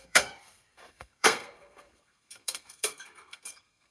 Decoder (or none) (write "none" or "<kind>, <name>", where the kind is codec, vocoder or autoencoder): codec, SNAC